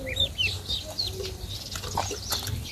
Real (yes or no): yes